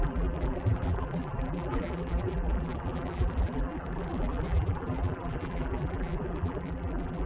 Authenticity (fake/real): fake